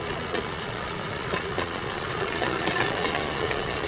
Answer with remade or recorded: remade